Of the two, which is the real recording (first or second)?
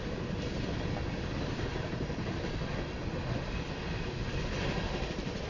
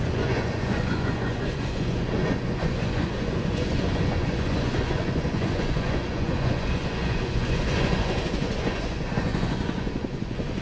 first